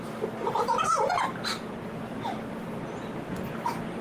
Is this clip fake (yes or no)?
no